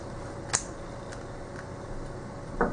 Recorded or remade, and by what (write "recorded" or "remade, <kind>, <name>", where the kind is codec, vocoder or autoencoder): recorded